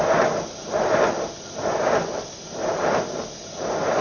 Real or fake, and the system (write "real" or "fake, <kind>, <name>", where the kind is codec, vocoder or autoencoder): real